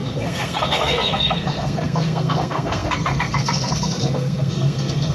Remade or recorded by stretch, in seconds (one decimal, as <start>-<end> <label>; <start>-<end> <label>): 0.0-5.1 remade